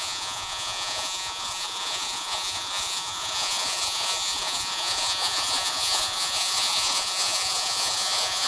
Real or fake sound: fake